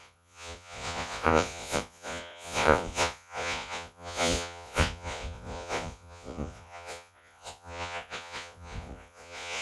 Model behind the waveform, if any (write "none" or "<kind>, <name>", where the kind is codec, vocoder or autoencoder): vocoder, Vocos